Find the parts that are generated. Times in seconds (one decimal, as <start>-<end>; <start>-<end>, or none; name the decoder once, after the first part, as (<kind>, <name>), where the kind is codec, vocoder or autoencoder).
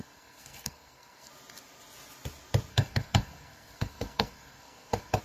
0.0-1.3 (codec, SNAC); 2.7-5.2